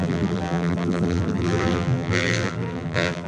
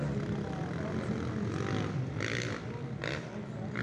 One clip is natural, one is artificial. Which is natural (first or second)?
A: second